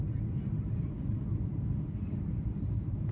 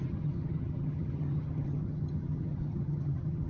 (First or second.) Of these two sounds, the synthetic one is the second